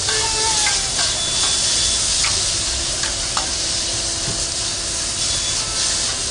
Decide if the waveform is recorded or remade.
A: recorded